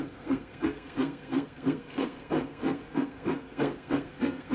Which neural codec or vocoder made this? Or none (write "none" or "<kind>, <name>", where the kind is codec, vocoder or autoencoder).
codec, SNAC